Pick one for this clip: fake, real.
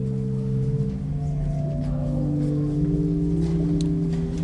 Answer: real